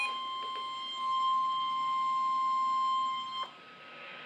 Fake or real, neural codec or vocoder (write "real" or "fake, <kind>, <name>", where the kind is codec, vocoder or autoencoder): real